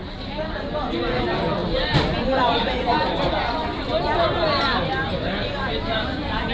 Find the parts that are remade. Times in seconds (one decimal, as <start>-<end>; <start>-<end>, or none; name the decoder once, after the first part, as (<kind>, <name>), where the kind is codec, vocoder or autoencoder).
none